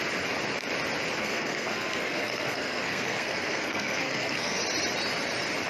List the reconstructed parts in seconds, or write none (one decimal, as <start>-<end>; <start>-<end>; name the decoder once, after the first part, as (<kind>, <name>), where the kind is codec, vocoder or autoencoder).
1.2-4.6 (codec, SNAC)

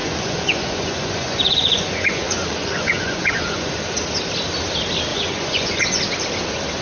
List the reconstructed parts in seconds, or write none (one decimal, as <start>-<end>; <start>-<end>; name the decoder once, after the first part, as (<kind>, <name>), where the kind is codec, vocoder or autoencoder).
0.0-3.7 (vocoder, Vocos); 5.1-6.0

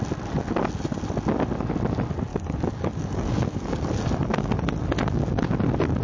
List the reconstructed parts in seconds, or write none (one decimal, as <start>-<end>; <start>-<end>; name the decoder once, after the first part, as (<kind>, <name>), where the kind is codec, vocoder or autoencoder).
2.3-5.5 (codec, DAC)

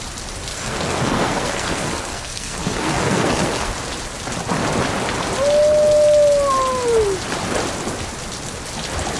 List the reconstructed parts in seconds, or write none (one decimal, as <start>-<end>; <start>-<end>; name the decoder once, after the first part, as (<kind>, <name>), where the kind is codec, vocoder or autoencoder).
0.5-3.7 (codec, SNAC)

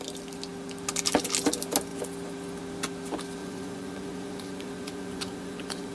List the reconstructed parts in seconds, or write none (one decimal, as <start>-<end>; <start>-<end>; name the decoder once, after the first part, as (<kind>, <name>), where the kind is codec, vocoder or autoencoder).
3.4-5.9 (vocoder, Vocos)

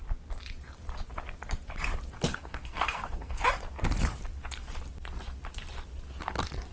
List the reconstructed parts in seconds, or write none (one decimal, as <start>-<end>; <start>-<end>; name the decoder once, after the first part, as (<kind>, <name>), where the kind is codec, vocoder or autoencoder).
2.3-3.4 (codec, SNAC)

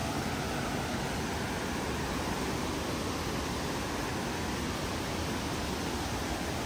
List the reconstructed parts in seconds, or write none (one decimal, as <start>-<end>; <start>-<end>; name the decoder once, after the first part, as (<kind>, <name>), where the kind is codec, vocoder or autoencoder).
none